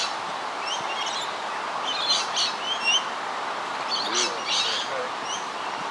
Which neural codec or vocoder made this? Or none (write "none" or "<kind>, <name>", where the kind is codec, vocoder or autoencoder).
none